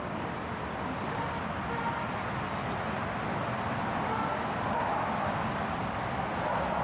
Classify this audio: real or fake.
real